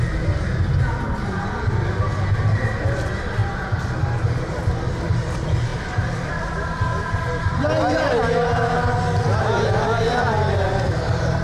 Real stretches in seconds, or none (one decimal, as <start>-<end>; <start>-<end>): 0.0-5.7; 6.3-11.4

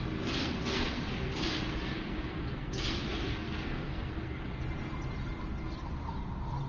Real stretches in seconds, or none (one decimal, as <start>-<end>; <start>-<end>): 0.0-0.4; 4.4-6.7

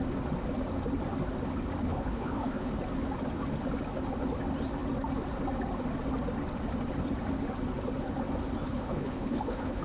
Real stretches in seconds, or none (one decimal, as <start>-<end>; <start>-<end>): 0.0-1.9; 2.7-8.6

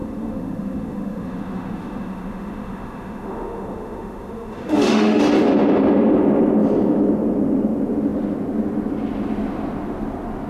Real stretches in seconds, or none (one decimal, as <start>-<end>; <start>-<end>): 5.2-10.5

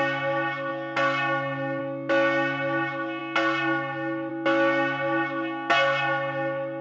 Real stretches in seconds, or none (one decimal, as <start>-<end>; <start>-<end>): 0.0-6.8

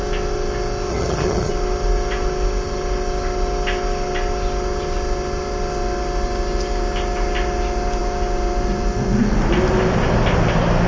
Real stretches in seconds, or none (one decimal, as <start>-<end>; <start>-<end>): 0.0-0.9; 1.5-10.9

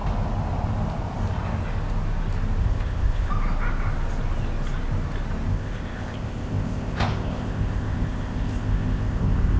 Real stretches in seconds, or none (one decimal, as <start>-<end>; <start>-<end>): 0.0-2.6; 3.3-5.5